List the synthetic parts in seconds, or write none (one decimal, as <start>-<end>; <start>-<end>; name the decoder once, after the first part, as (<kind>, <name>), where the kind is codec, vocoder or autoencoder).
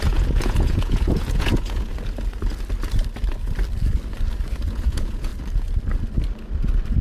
0.0-1.9 (vocoder, Vocos); 4.7-5.3